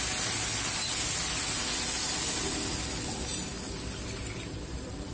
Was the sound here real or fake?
real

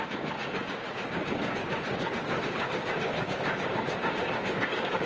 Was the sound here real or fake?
fake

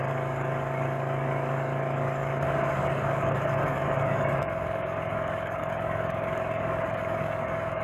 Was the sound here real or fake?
fake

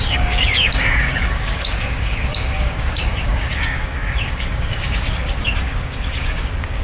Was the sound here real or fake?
fake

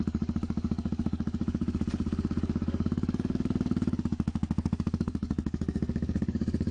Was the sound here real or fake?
fake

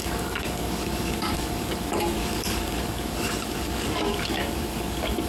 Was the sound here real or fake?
fake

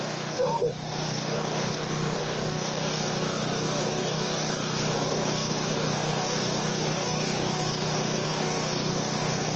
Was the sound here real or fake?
fake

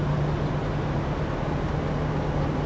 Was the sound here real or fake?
real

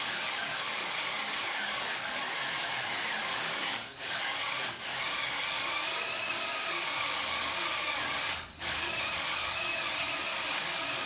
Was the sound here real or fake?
fake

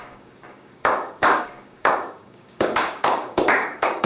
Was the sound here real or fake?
fake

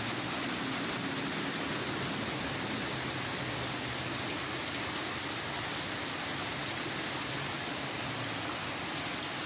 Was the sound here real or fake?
real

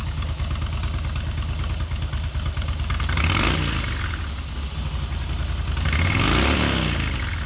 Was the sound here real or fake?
real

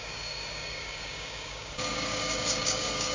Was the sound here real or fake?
fake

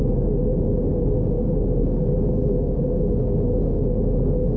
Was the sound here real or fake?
fake